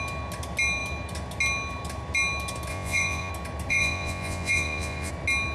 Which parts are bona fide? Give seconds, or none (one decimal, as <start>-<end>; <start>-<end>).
0.0-2.7; 3.3-3.7; 5.1-5.5